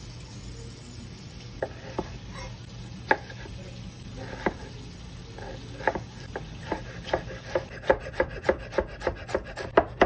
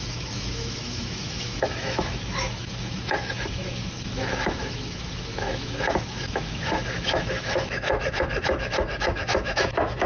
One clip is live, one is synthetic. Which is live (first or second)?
first